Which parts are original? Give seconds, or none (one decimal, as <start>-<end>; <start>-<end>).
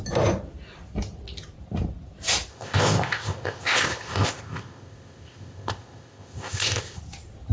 0.0-2.5; 7.0-7.5